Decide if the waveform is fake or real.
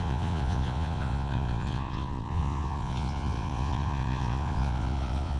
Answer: fake